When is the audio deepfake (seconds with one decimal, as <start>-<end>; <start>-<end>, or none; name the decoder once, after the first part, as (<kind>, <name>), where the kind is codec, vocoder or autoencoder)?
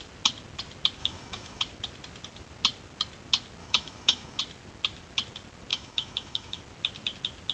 1.0-1.6 (autoencoder, DAC-VAE); 3.6-4.4; 5.7-6.6